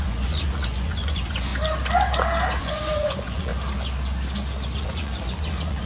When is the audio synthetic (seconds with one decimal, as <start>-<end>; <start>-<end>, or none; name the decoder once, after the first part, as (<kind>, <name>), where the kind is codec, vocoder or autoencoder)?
0.0-1.5 (vocoder, Vocos); 2.6-3.5; 4.8-5.9